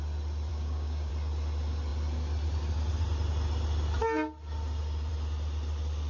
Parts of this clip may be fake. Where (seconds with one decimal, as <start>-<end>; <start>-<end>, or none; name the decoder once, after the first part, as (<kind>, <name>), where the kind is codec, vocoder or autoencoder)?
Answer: 0.5-1.1 (codec, DAC)